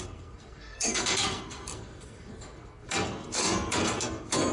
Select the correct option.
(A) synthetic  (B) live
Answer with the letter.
A